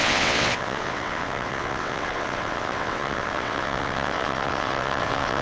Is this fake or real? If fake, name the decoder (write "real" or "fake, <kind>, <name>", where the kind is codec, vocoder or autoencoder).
fake, vocoder, WaveNeXt